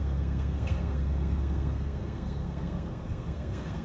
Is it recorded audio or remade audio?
remade